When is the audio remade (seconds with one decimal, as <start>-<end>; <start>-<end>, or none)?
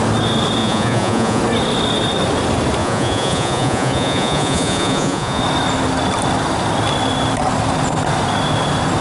0.6-1.4; 2.8-5.4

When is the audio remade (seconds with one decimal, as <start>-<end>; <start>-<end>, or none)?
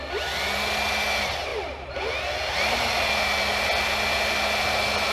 none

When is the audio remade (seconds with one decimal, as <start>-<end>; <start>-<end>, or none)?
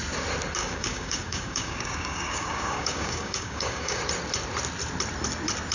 0.6-4.0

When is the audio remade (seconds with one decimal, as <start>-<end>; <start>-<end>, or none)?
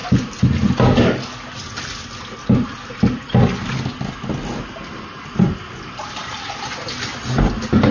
none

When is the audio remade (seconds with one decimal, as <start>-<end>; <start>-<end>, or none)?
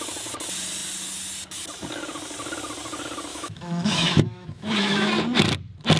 3.3-5.1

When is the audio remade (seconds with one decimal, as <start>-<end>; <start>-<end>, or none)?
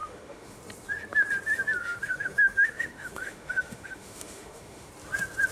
0.0-0.6; 1.8-4.9